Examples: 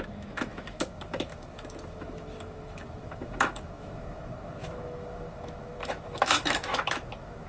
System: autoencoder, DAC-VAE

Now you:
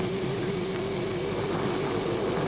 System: none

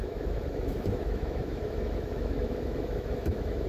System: autoencoder, DAC-VAE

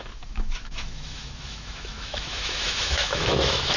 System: autoencoder, DAC-VAE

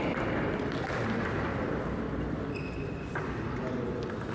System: none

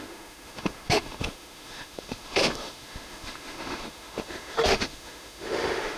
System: autoencoder, DAC-VAE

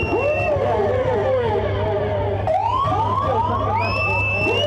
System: none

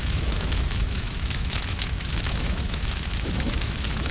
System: autoencoder, DAC-VAE